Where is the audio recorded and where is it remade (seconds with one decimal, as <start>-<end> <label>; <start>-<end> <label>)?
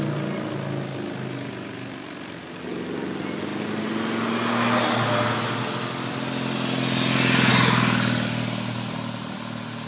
0.0-9.9 recorded